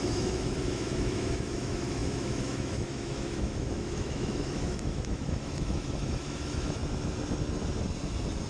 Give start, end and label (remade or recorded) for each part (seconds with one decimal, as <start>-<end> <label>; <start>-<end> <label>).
0.0-6.8 remade; 6.8-8.5 recorded